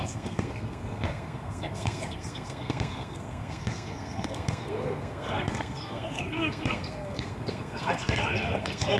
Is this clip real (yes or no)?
no